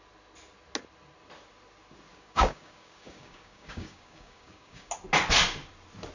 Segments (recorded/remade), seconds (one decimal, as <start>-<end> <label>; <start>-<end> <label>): 0.0-2.1 recorded; 2.1-4.9 remade; 4.9-6.1 recorded